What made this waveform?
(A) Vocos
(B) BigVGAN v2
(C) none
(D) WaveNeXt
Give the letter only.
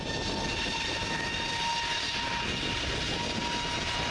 C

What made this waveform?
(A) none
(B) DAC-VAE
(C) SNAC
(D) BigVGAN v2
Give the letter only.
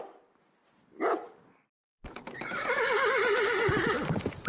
A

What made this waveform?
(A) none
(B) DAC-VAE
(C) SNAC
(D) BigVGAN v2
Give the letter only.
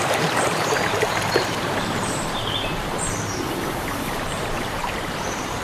D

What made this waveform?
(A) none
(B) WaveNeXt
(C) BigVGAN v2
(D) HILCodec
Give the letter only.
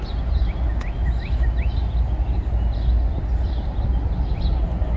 A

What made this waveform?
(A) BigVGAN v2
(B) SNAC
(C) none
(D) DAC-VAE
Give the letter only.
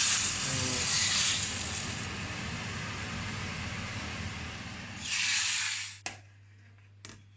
C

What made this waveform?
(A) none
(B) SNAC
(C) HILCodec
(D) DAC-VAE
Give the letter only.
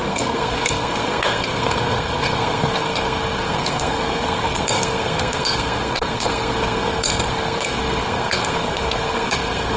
B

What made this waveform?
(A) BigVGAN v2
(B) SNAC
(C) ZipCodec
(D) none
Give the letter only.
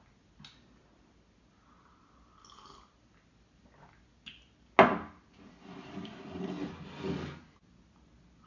D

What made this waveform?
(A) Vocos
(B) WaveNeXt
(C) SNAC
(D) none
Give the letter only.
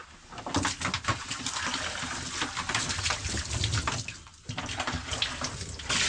D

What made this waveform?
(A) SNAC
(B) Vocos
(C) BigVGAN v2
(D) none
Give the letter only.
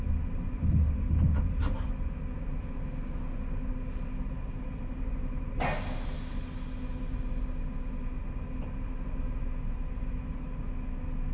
D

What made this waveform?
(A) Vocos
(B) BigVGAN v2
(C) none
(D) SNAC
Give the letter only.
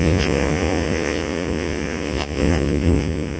A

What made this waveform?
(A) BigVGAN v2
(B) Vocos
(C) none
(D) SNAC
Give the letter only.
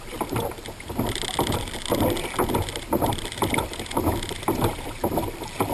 C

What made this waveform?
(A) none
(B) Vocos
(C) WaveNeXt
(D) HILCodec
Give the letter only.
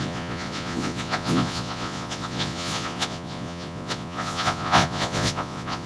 B